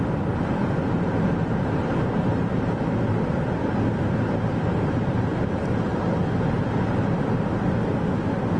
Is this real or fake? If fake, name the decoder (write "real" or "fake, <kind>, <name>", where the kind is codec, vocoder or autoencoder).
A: real